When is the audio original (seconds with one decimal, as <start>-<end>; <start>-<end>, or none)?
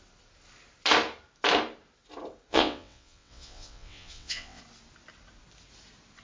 0.0-2.5; 4.6-6.2